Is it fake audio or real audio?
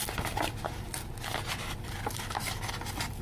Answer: real